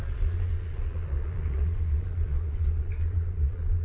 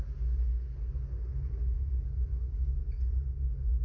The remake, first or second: first